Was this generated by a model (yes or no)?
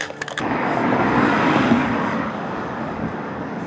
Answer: yes